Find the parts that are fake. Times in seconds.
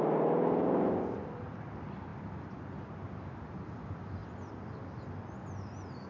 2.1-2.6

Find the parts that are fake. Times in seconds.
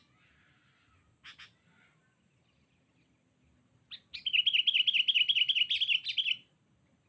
none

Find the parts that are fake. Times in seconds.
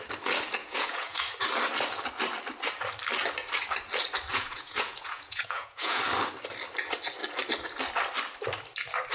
0.6-1.2; 4.3-6.0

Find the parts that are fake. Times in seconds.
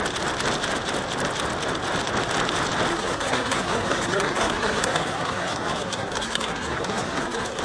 2.9-7.6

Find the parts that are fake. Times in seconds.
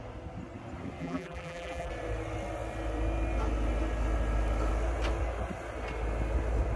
1.0-1.9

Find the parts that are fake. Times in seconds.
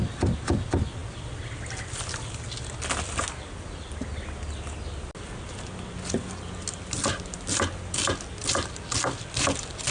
none